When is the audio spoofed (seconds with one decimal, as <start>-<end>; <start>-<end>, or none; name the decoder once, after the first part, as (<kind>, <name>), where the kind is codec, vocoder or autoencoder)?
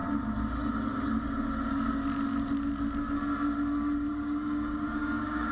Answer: 4.1-5.5 (codec, DAC)